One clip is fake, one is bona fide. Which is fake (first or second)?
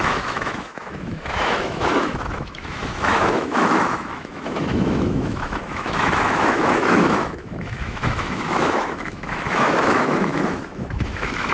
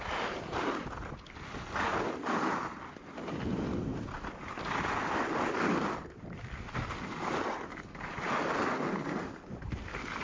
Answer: first